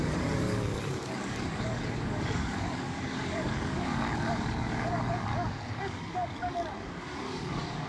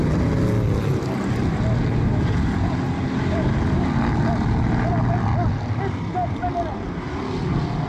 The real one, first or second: second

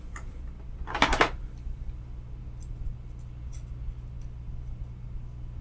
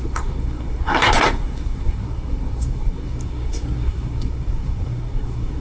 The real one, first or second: first